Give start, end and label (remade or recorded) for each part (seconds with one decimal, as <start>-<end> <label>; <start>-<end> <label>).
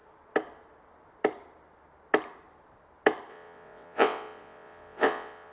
0.0-3.3 recorded; 3.3-5.5 remade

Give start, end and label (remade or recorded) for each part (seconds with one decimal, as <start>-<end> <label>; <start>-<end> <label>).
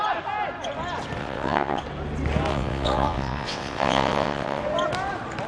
0.0-1.2 recorded; 1.2-1.8 remade; 1.8-2.5 recorded; 2.5-4.6 remade; 4.6-5.5 recorded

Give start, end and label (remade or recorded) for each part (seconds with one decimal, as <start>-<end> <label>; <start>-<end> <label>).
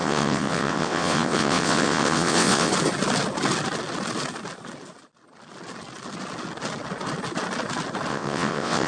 0.0-2.7 remade; 2.7-8.1 recorded; 8.1-8.9 remade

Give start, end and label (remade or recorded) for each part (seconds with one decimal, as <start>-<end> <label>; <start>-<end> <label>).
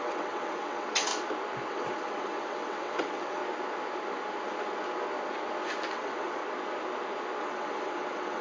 0.0-1.1 remade; 1.1-1.7 recorded; 1.7-3.4 remade; 3.4-5.9 recorded; 5.9-6.4 remade; 6.4-7.4 recorded; 7.4-8.4 remade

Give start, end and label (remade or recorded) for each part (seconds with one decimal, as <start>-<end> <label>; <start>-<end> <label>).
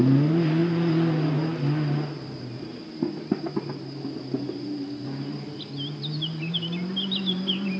0.0-7.8 recorded